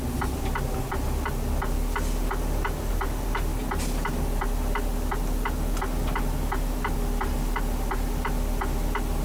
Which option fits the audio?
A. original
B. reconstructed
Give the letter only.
A